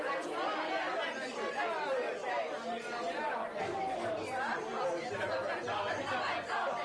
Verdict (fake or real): real